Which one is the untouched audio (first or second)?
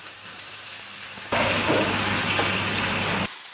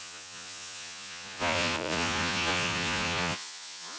first